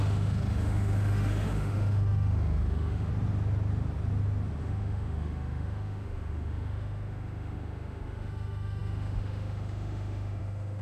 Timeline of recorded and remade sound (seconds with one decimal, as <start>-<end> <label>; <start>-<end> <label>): 0.0-3.1 remade; 3.1-4.6 recorded; 4.6-10.8 remade